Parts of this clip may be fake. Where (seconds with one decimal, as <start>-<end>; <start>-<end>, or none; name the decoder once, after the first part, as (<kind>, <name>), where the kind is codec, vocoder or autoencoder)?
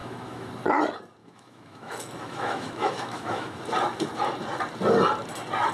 0.0-0.5 (autoencoder, DAC-VAE); 1.2-3.6